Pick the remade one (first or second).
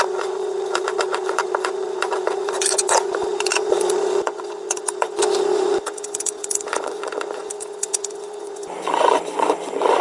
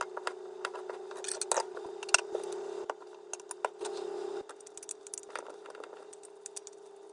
first